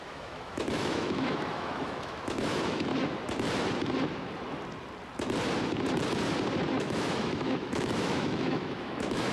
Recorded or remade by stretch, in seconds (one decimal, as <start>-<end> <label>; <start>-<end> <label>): 0.0-2.9 remade; 2.9-6.8 recorded; 6.8-9.3 remade